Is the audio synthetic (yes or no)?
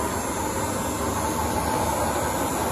no